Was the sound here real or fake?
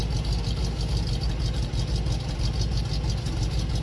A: real